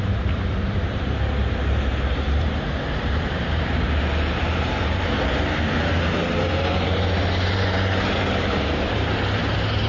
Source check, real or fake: fake